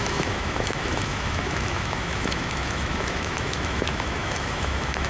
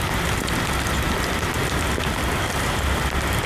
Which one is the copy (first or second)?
first